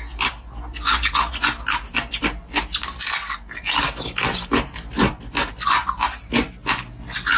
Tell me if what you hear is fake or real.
real